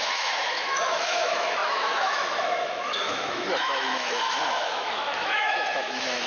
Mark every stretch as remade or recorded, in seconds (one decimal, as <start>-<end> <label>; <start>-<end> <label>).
0.0-6.3 remade